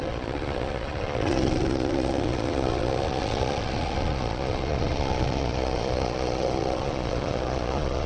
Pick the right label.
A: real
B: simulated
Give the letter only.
B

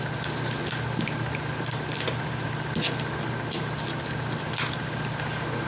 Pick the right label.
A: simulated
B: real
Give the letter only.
B